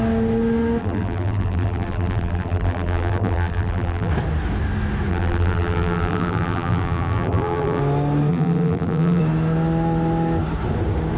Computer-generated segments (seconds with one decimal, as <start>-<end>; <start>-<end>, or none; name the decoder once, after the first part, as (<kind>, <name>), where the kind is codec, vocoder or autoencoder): 0.8-4.1 (vocoder, BigVGAN v2); 5.1-7.8; 8.3-9.2